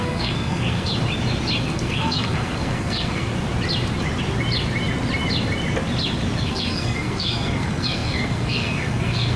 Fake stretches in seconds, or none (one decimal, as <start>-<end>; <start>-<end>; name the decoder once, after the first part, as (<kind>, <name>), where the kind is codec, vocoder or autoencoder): 0.0-0.9 (codec, SNAC); 1.6-3.3; 6.4-9.4